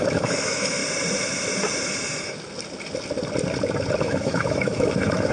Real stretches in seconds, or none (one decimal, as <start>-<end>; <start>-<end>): 0.8-4.0